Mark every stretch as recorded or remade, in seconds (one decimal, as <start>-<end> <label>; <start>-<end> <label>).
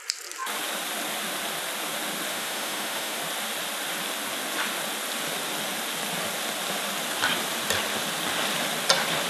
0.0-2.3 recorded; 2.3-3.2 remade; 3.2-9.3 recorded